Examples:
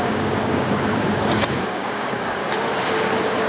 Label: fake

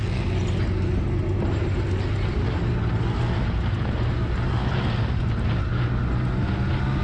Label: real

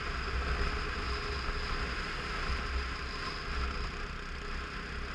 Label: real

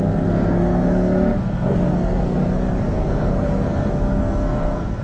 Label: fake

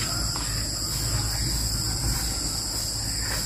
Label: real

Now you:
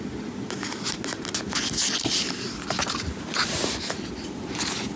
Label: real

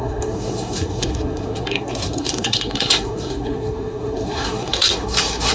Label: fake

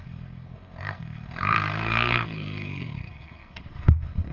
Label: fake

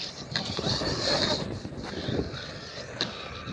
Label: real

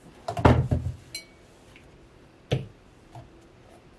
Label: real